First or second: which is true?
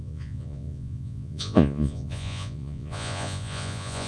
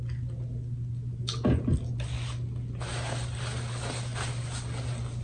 second